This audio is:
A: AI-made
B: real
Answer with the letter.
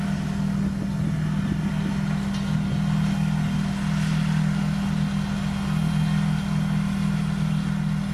B